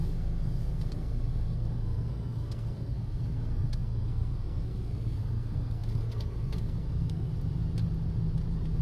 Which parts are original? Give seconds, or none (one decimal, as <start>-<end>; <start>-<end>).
7.3-8.8